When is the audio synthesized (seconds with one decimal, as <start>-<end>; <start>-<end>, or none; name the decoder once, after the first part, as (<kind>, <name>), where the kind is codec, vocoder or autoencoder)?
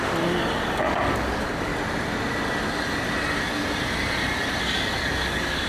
0.0-1.7 (codec, DAC); 4.6-5.7